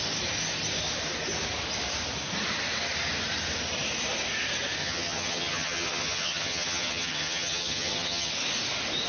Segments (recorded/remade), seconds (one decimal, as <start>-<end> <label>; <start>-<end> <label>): 0.0-4.8 recorded; 4.8-8.3 remade; 8.3-9.1 recorded